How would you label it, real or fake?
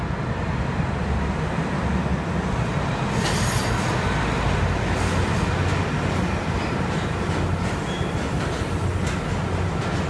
real